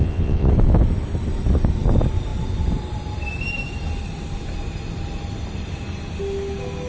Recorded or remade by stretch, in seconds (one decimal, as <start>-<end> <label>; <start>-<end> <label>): 0.0-0.5 remade; 0.5-6.9 recorded

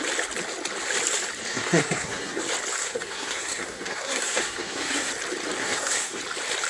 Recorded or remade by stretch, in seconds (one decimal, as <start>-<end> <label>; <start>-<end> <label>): 0.0-1.5 recorded; 1.5-2.4 remade; 2.4-2.8 recorded; 2.8-5.1 remade; 5.1-5.6 recorded; 5.6-6.2 remade; 6.2-6.7 recorded

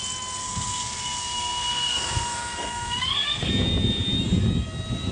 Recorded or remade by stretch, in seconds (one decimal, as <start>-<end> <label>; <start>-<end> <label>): 0.0-0.4 recorded; 0.4-3.5 remade; 3.5-5.1 recorded

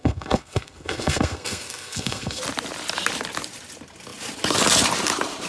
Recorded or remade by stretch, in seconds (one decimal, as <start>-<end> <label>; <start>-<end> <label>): 0.0-2.4 remade; 2.4-5.5 recorded

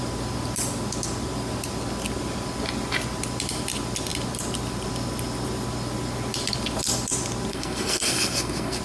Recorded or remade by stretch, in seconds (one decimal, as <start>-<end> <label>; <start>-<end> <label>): 0.0-7.5 recorded; 7.5-8.8 remade

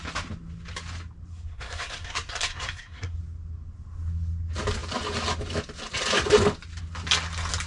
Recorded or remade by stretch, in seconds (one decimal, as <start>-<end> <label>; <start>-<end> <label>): 0.0-1.3 recorded; 1.3-3.2 remade; 3.2-7.7 recorded